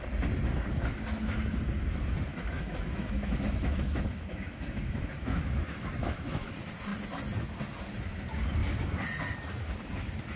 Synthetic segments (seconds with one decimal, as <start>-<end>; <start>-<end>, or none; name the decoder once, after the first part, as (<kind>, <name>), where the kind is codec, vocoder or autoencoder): 2.3-6.5 (autoencoder, DAC-VAE)

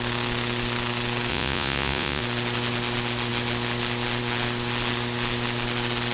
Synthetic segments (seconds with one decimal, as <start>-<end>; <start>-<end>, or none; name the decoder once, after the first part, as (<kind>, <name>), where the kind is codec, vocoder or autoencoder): 1.3-2.2 (vocoder, Vocos)

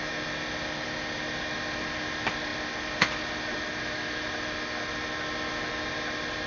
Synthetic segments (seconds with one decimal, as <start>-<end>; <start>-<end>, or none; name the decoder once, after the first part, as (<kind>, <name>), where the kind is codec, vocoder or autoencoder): none

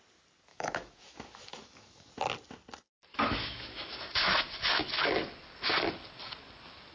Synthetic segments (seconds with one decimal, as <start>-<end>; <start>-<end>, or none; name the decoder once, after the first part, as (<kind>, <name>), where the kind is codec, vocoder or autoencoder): 0.5-2.1 (autoencoder, DAC-VAE); 3.1-4.9

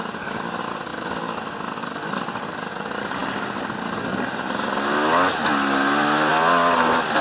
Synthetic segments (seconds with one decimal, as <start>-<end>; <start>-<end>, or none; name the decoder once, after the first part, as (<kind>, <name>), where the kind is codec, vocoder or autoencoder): none